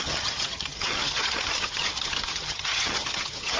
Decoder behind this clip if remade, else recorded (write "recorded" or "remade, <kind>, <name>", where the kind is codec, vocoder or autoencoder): remade, vocoder, HiFi-GAN